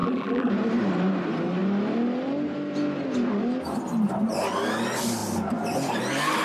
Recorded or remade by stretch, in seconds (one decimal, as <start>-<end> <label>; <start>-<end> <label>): 0.0-0.5 remade; 0.5-6.4 recorded